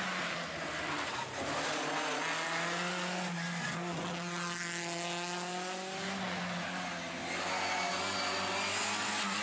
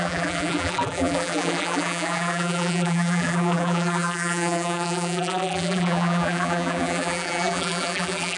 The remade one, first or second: second